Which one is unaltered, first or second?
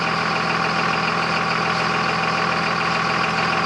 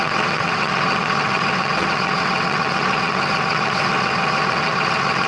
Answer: first